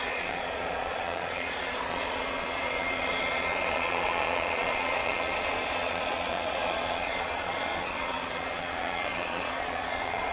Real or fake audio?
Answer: fake